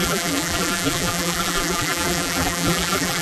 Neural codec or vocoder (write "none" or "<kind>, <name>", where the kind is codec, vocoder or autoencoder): vocoder, BigVGAN v2